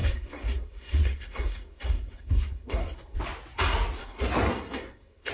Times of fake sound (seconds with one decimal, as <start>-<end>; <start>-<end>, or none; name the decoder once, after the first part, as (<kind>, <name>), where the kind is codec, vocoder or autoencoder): 0.0-3.2 (codec, SNAC); 4.0-5.3